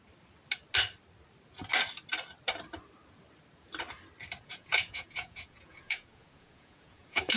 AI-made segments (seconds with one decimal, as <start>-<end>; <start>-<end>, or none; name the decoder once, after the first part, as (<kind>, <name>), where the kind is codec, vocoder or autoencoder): 4.4-7.4 (vocoder, Vocos)